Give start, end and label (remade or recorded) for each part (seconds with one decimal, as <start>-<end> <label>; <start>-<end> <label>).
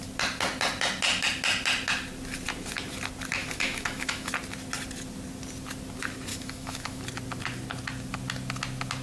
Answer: 0.0-3.4 recorded; 3.4-4.3 remade; 4.3-6.3 recorded; 6.3-7.0 remade; 7.0-9.0 recorded